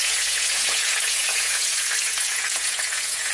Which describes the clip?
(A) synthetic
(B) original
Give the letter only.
A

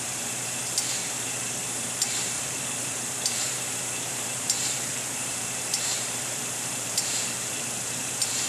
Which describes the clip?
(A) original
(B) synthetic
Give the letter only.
B